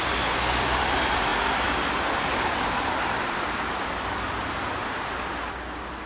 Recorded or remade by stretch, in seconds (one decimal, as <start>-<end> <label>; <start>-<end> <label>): 0.0-6.1 recorded